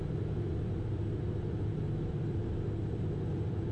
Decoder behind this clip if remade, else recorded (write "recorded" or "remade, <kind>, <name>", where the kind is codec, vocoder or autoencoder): recorded